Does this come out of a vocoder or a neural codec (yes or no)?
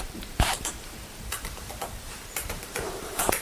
yes